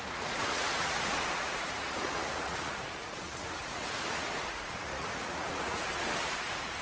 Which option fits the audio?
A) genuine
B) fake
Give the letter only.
B